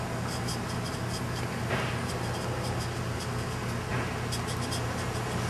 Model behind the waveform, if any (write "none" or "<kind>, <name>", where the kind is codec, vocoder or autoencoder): none